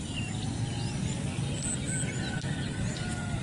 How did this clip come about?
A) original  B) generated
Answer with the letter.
A